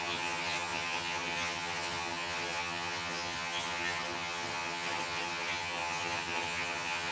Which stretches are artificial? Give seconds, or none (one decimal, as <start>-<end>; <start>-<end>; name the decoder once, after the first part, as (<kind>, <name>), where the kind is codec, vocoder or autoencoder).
0.0-7.1 (vocoder, HiFi-GAN)

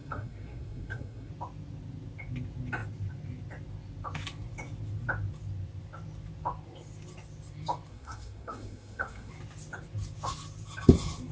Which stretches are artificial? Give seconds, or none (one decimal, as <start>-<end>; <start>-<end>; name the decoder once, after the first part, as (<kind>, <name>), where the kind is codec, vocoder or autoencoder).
0.0-1.3 (codec, SNAC); 7.9-9.3

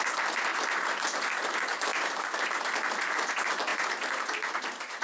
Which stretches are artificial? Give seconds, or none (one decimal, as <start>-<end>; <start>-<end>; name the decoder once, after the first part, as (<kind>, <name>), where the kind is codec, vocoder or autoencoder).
none

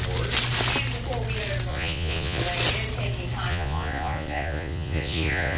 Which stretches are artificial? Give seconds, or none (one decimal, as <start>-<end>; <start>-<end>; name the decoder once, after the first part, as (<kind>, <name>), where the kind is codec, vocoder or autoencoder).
1.7-2.4 (vocoder, Vocos); 3.5-5.6

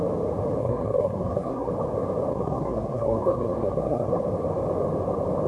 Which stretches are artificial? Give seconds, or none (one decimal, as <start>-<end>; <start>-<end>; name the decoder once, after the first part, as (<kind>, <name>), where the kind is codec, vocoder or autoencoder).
0.6-1.7 (codec, SNAC); 2.3-4.1